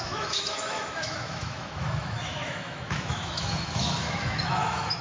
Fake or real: fake